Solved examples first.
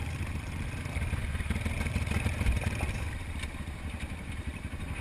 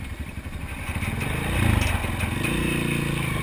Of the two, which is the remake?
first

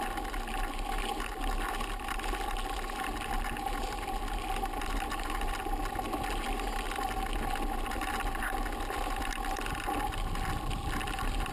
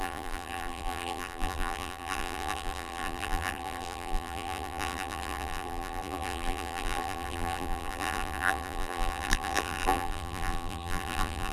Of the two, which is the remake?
second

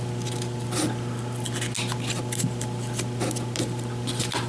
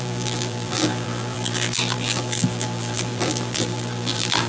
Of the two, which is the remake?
second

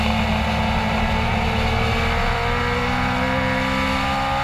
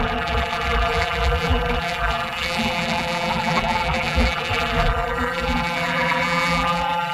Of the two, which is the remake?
second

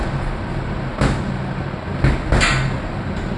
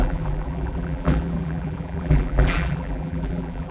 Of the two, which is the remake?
second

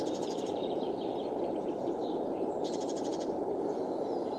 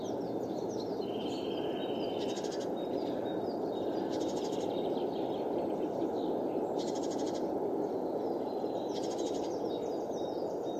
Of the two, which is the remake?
first